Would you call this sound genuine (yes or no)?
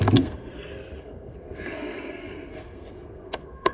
no